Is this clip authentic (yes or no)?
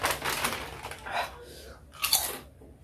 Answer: yes